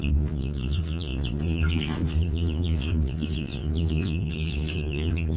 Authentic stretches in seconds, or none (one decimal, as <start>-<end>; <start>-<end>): none